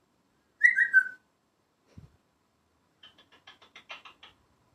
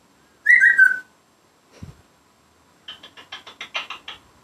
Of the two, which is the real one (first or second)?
second